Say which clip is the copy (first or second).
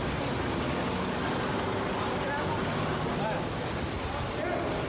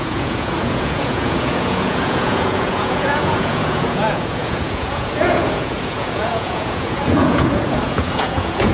second